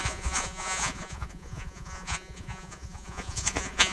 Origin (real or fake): fake